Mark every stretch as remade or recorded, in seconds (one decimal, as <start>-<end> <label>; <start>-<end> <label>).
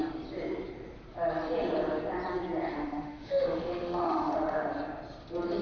0.0-2.7 recorded; 2.7-4.7 remade; 4.7-5.6 recorded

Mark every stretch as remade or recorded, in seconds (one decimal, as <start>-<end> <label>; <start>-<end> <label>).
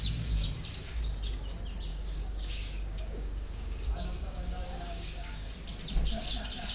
0.0-1.9 recorded; 1.9-5.5 remade; 5.5-6.7 recorded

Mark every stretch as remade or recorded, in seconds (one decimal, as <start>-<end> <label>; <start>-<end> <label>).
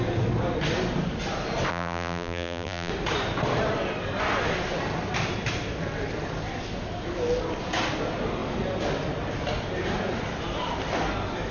0.0-1.7 recorded; 1.7-2.9 remade; 2.9-11.5 recorded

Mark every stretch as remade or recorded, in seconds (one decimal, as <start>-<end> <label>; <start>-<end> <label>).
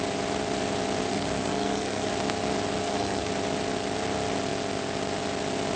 0.0-1.1 recorded; 1.1-2.1 remade; 2.1-2.8 recorded; 2.8-3.3 remade; 3.3-5.8 recorded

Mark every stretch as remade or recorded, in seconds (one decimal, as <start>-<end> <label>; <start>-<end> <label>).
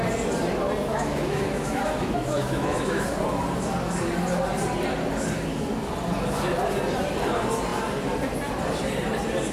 0.0-0.9 recorded; 0.9-3.1 remade; 3.1-9.5 recorded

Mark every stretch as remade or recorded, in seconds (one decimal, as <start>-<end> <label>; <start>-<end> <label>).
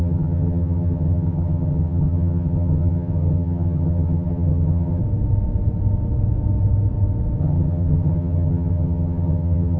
0.0-5.0 remade; 5.0-7.4 recorded; 7.4-9.8 remade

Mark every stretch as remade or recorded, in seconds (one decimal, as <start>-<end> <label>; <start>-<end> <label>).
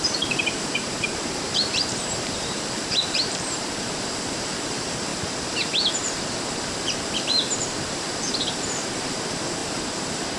0.0-5.1 remade; 5.1-5.9 recorded; 5.9-9.6 remade; 9.6-10.4 recorded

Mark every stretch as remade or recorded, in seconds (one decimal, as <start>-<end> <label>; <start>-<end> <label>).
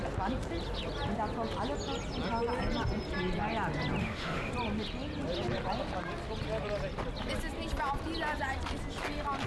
0.0-4.0 recorded; 4.0-4.5 remade; 4.5-9.5 recorded